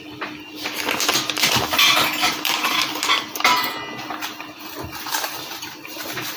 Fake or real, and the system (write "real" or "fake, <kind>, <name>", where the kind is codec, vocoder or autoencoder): real